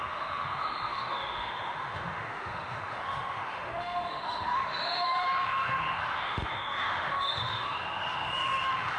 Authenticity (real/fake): fake